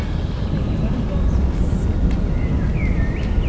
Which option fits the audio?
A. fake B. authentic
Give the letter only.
B